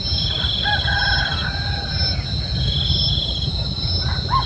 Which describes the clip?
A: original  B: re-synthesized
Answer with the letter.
A